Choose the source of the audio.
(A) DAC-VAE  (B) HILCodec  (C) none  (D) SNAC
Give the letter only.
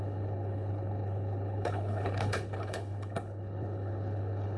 B